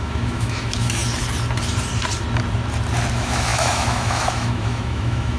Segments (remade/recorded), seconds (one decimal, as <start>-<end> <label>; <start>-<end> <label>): 0.0-1.0 remade; 1.0-3.1 recorded; 3.1-5.4 remade